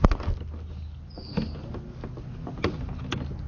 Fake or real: real